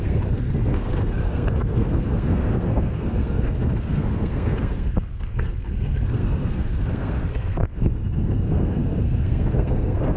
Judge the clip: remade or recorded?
remade